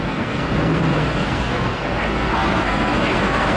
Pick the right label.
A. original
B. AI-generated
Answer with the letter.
B